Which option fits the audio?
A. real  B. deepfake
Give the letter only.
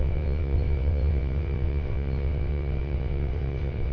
B